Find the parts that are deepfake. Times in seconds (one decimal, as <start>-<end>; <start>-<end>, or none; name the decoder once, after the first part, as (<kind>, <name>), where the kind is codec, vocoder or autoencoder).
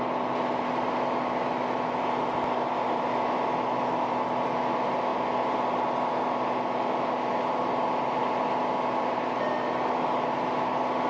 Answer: none